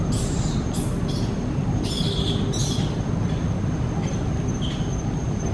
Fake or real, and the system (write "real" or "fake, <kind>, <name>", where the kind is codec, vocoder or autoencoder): real